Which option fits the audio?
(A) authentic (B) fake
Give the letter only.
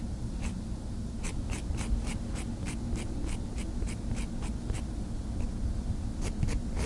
A